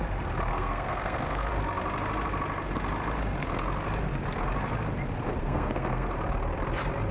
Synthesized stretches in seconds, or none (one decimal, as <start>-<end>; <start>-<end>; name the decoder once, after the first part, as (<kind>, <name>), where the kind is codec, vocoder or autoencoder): 0.5-1.5 (codec, SNAC); 5.4-6.1